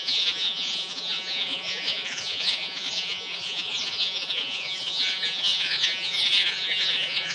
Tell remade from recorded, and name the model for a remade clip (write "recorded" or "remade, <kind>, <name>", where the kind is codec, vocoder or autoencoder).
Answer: remade, vocoder, Vocos